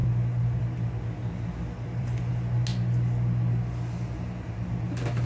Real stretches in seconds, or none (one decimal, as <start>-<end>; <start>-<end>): 0.6-1.2; 2.3-5.3